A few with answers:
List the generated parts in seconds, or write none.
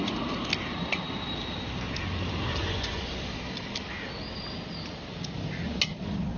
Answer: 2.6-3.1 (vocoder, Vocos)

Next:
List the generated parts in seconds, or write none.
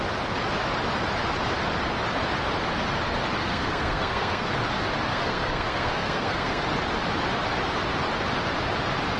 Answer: 3.4-4.5 (codec, SNAC); 5.1-6.6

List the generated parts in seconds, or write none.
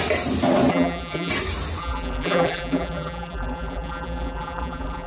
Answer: 0.7-1.3 (vocoder, BigVGAN v2); 1.8-5.1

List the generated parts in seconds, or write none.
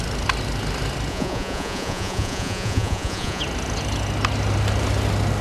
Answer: 1.1-3.4 (vocoder, Vocos)